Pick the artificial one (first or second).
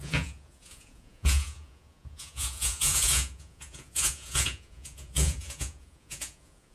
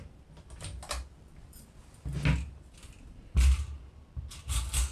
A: first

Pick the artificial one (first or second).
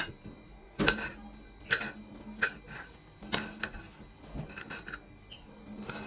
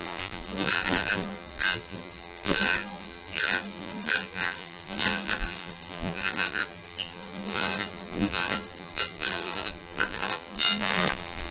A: second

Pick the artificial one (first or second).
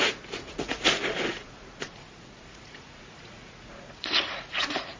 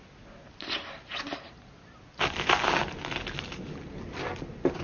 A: first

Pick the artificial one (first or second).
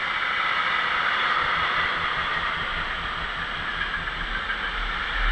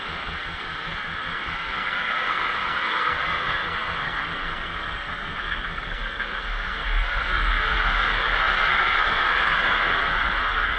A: second